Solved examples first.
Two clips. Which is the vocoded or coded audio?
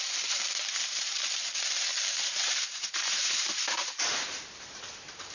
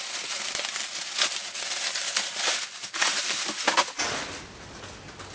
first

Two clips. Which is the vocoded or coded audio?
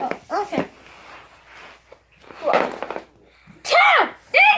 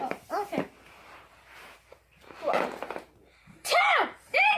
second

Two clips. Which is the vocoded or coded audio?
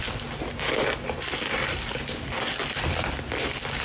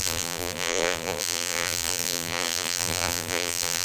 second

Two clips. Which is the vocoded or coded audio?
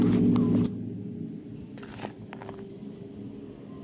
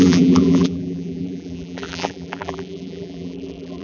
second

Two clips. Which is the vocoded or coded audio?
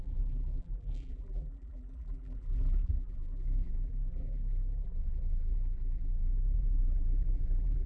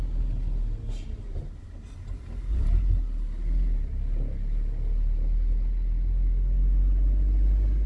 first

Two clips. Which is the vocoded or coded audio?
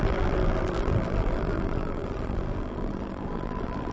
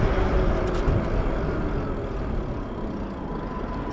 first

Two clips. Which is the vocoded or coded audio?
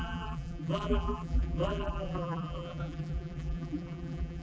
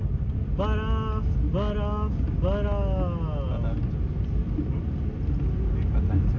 first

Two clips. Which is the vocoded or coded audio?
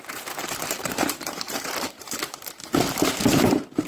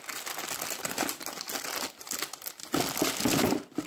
first